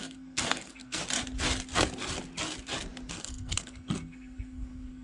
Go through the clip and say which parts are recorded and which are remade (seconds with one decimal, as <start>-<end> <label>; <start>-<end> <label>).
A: 0.0-1.0 remade; 1.0-3.1 recorded; 3.1-5.0 remade